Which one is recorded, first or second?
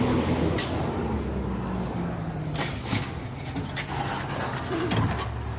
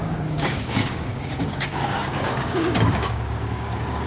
first